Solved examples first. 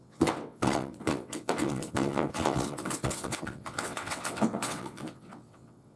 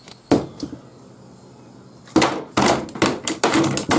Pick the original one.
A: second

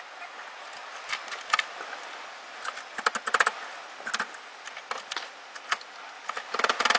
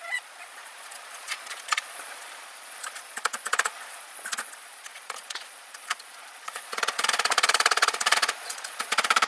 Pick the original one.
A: first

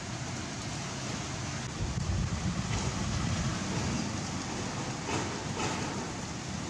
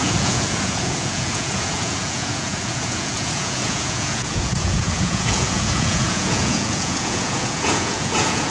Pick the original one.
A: first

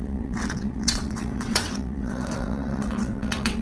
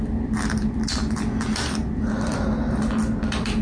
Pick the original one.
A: second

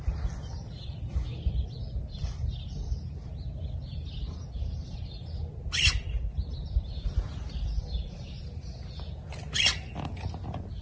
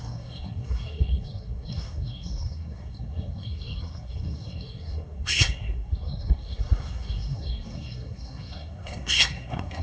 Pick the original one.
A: first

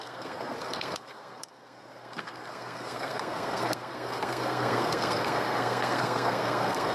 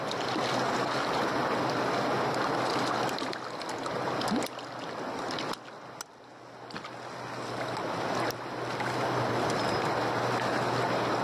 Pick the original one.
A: second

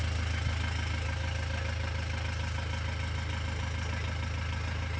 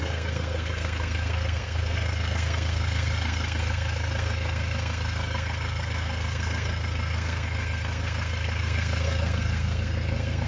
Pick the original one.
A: first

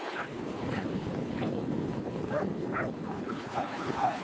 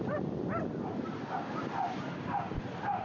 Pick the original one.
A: second